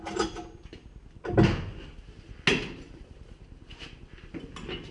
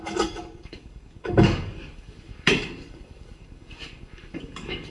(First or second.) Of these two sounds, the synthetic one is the second